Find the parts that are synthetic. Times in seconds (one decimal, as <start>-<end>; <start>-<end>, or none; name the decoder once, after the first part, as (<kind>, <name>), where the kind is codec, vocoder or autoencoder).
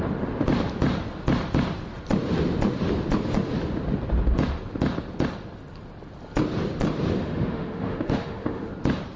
7.2-8.7 (autoencoder, DAC-VAE)